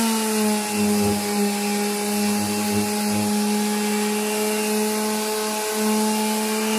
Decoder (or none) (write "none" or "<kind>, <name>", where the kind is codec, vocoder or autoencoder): none